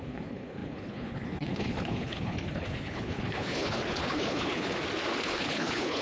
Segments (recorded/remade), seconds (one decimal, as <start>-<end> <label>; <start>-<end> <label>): 0.0-4.7 remade; 4.7-5.2 recorded; 5.2-6.0 remade